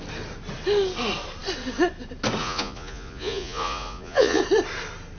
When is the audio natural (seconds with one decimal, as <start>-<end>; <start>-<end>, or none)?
0.0-2.4; 4.4-5.2